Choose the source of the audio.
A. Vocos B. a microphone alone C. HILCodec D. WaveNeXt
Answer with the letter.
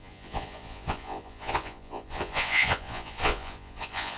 A